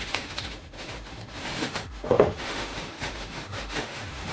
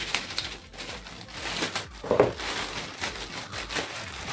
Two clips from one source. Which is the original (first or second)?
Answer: second